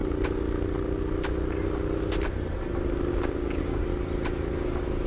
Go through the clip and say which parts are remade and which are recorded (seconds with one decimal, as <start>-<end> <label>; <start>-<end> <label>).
0.0-3.1 recorded; 3.1-3.9 remade; 3.9-5.1 recorded